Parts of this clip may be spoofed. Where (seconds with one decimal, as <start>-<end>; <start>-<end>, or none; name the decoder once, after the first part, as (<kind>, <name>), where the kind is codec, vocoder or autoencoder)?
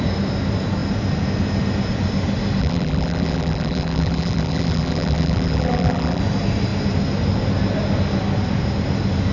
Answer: 2.6-6.2 (vocoder, BigVGAN v2)